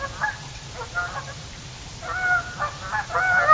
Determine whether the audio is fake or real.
real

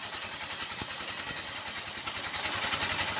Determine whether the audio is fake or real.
real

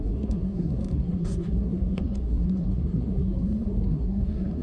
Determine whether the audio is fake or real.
fake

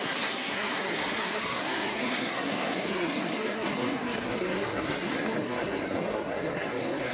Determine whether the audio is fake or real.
fake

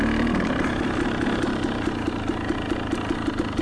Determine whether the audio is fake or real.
real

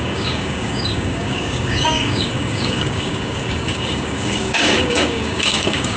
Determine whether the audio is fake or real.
fake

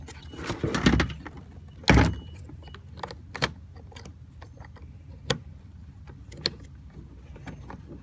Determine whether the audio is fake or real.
real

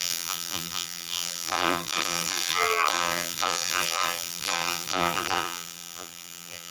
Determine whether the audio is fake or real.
fake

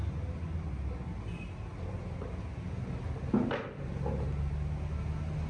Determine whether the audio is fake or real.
real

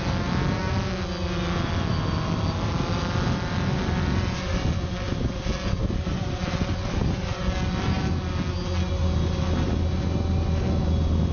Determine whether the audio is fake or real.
real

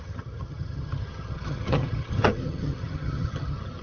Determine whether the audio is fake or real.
fake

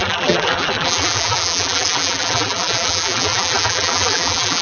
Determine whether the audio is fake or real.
fake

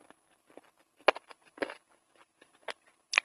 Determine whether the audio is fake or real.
real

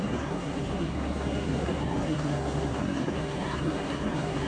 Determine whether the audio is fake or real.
fake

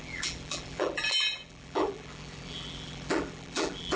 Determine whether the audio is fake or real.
fake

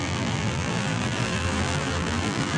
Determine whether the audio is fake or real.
fake